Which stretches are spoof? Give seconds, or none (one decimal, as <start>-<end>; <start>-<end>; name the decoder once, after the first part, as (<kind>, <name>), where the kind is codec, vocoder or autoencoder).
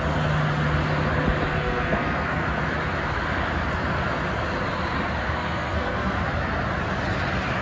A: 1.5-2.4 (codec, SNAC); 5.2-6.2